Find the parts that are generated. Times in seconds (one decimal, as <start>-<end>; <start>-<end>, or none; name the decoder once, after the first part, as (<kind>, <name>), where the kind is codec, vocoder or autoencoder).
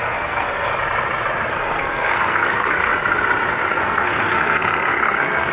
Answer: 0.0-0.7 (codec, SNAC); 1.5-2.9; 3.5-5.5